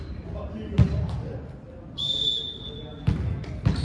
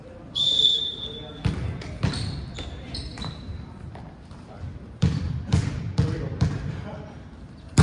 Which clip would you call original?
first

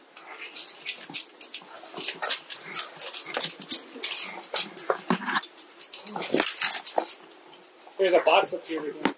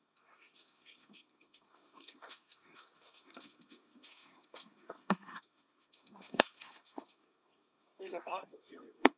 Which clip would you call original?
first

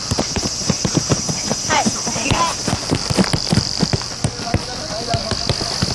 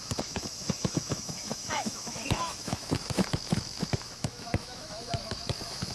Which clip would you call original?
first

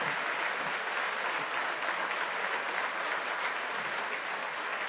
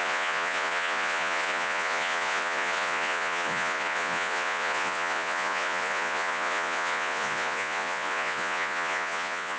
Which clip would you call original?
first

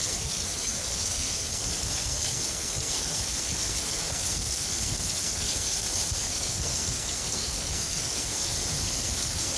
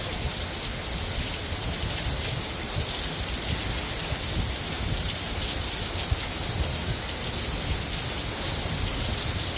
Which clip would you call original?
second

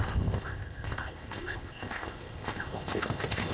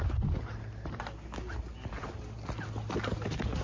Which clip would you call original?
second